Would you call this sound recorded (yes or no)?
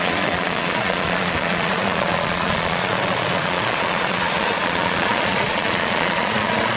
no